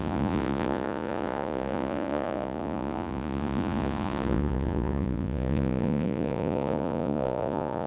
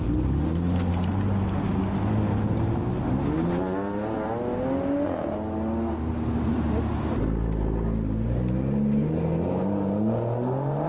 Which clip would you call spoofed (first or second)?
first